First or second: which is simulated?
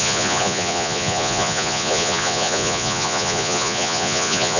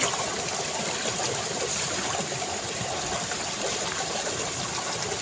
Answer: first